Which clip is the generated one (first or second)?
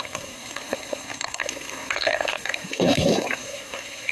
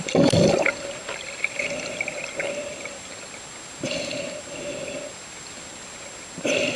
first